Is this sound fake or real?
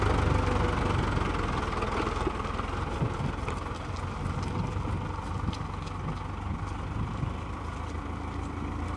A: real